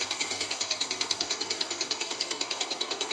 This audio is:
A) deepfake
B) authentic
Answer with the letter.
A